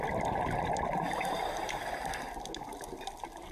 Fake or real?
real